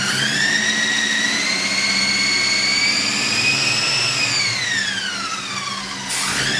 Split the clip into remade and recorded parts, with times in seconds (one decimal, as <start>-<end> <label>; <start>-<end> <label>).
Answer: 0.0-6.6 recorded